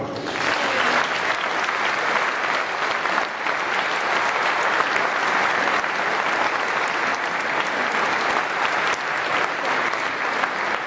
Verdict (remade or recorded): recorded